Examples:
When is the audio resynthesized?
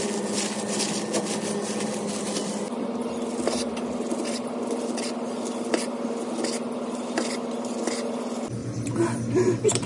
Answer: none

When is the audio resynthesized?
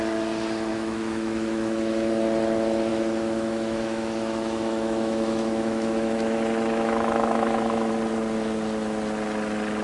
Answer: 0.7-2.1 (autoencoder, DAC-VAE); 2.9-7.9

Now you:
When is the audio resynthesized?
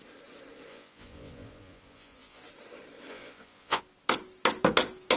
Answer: 0.7-2.4 (vocoder, Vocos); 3.1-3.8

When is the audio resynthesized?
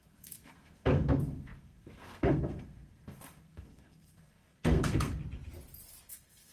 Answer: 0.0-5.2 (codec, SNAC); 6.1-6.5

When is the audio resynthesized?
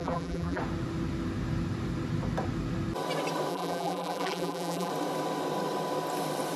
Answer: 0.0-0.6 (vocoder, BigVGAN v2); 3.5-4.9